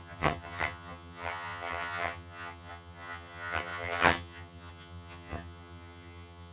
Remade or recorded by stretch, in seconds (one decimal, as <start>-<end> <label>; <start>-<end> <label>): 0.0-6.5 remade